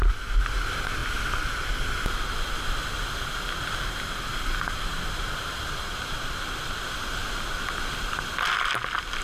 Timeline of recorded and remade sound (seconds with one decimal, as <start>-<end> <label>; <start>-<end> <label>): 0.0-9.2 recorded

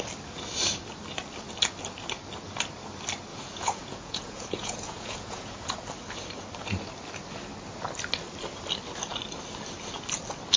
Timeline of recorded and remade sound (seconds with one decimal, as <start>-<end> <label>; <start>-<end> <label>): 0.0-3.3 recorded; 3.3-5.7 remade; 5.7-10.6 recorded

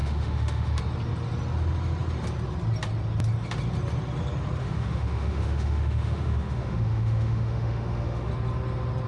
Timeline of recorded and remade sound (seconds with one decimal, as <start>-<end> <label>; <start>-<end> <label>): 0.0-0.8 remade; 0.8-4.6 recorded; 4.6-8.3 remade; 8.3-9.1 recorded

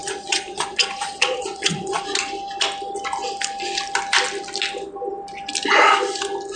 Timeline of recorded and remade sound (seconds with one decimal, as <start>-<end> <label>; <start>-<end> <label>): 0.0-2.0 remade; 2.0-6.6 recorded

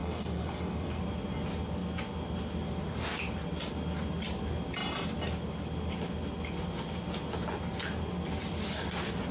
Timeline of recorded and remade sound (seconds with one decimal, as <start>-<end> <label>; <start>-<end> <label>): 0.0-1.0 remade; 1.0-9.3 recorded

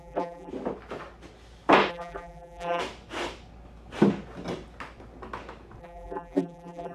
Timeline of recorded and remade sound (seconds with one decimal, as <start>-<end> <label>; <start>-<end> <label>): 0.0-0.5 remade; 0.5-1.9 recorded; 1.9-2.8 remade; 2.8-5.8 recorded; 5.8-6.9 remade